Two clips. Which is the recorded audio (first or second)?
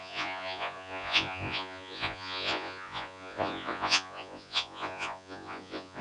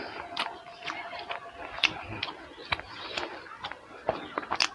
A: second